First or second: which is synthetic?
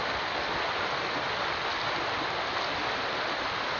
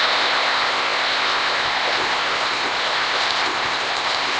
second